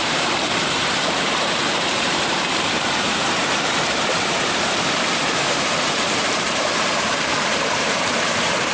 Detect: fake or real fake